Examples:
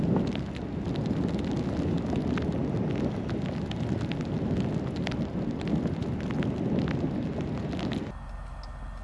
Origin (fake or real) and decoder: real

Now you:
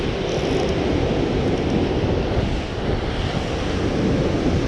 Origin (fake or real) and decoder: real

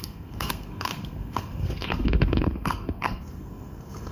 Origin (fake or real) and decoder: fake, codec, SNAC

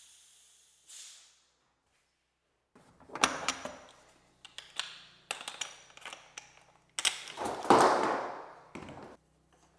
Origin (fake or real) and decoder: real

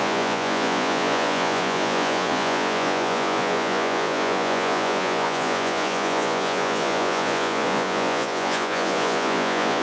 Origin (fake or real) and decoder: fake, vocoder, Vocos